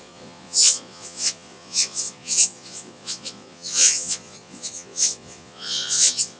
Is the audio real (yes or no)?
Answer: no